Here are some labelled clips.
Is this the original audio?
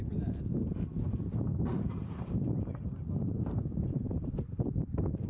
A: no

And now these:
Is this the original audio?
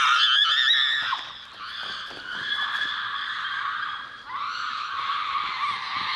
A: yes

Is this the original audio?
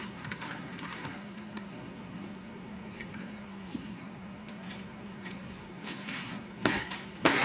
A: no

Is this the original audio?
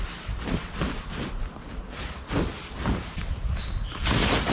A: yes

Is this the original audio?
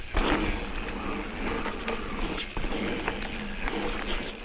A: yes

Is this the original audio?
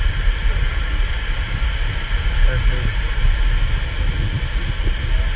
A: yes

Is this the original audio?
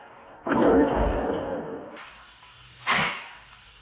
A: no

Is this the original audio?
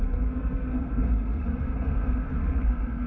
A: no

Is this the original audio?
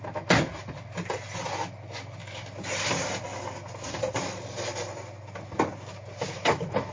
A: yes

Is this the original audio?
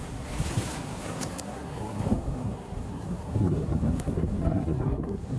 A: no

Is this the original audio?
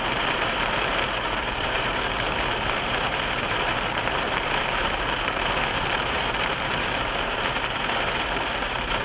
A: no